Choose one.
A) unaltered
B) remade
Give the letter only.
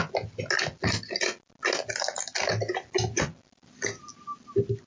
A